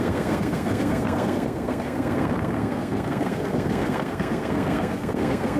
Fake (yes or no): yes